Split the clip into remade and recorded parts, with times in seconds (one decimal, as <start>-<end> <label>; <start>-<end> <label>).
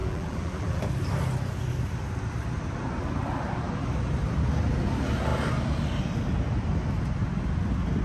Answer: 0.0-0.8 remade; 0.8-8.0 recorded